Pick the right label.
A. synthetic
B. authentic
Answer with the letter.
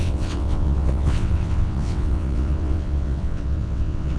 A